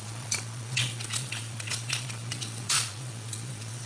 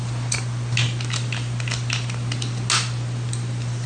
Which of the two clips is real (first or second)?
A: second